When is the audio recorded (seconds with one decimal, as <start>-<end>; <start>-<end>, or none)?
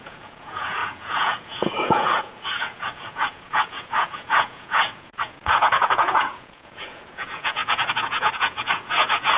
none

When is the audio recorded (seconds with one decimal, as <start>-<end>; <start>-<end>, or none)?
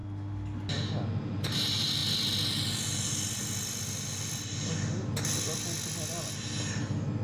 0.0-7.2